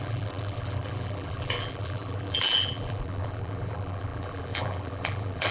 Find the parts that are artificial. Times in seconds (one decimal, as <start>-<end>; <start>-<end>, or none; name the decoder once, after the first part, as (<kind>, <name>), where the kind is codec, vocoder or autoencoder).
0.0-5.5 (vocoder, BigVGAN v2)